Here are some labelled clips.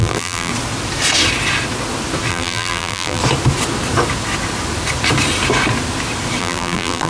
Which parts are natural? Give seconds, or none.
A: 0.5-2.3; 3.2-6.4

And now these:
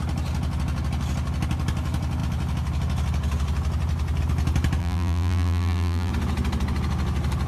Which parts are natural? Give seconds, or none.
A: 0.0-4.8; 6.1-7.5

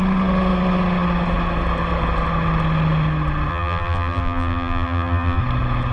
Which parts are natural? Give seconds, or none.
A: 0.0-3.5; 5.4-5.9

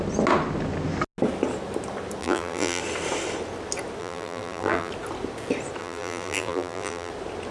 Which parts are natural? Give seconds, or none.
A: 0.0-2.2; 2.8-4.0; 4.9-5.8; 7.1-7.5